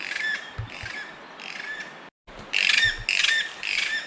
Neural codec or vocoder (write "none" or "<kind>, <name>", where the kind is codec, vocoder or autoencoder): none